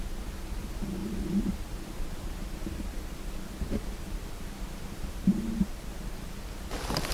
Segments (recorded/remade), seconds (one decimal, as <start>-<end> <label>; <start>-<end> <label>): 0.0-7.1 recorded